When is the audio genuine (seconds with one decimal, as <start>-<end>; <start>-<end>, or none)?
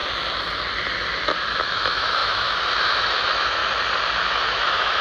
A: 0.0-1.6; 3.6-4.3